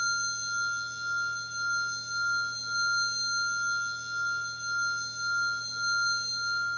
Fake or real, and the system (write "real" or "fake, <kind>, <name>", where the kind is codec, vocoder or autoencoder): real